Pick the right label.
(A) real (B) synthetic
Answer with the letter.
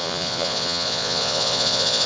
B